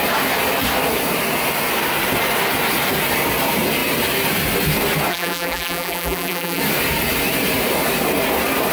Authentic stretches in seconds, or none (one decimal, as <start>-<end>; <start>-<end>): 0.0-5.1; 6.6-8.7